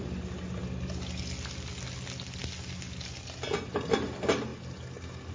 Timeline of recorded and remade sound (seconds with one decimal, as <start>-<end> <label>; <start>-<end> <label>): 0.0-5.3 recorded